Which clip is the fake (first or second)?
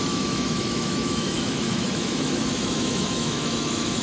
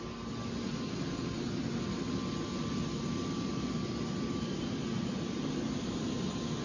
first